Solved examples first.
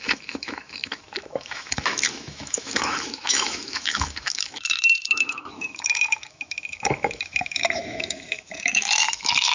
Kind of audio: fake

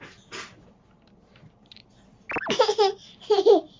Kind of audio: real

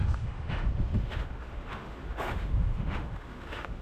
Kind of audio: fake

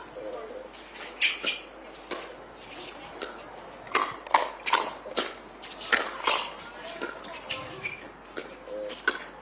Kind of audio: real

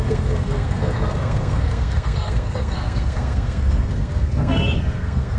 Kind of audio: fake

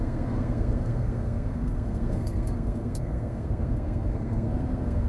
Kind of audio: fake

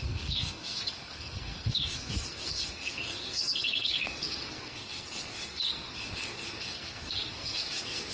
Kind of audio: fake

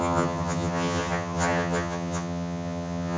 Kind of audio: fake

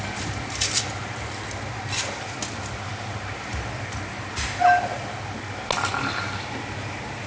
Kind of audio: real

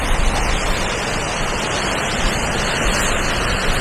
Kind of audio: real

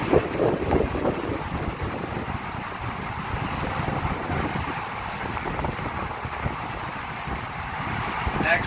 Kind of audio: real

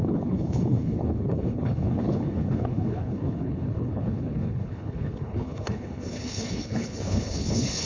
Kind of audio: fake